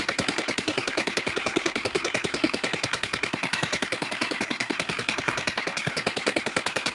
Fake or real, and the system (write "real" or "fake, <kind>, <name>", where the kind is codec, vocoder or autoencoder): fake, codec, SNAC